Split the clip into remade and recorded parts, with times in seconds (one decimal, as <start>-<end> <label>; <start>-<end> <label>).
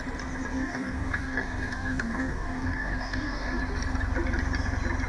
0.0-0.5 recorded; 0.5-3.6 remade; 3.6-5.1 recorded